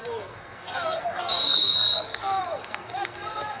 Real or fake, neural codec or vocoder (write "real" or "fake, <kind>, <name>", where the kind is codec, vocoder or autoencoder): fake, codec, SNAC